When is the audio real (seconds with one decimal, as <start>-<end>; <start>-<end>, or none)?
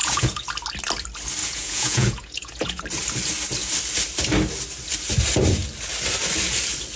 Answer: 0.5-1.4; 2.8-7.0